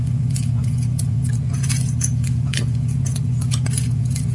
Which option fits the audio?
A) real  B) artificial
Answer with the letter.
B